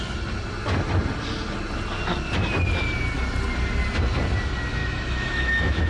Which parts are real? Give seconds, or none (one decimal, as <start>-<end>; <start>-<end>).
0.0-4.8

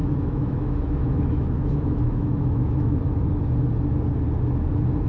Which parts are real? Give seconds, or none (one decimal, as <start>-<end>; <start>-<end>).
3.1-5.1